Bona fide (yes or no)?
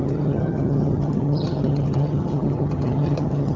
no